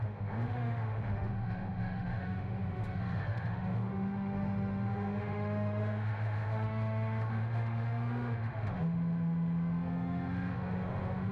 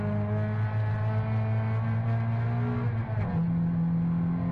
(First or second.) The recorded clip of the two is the second